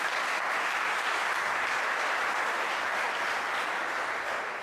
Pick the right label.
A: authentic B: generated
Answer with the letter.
A